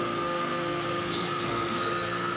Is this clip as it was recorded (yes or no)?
no